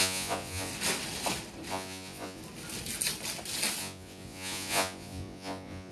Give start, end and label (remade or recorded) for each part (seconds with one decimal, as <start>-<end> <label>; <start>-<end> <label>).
0.0-0.7 remade; 0.7-1.7 recorded; 1.7-2.4 remade; 2.4-3.8 recorded; 3.8-5.9 remade